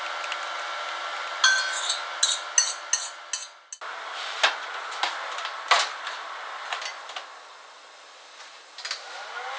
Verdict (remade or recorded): recorded